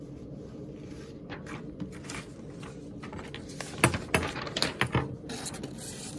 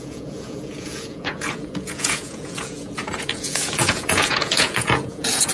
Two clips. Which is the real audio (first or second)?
first